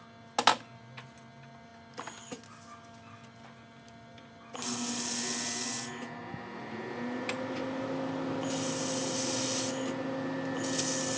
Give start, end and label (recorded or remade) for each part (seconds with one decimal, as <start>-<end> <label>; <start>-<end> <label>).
0.0-11.2 recorded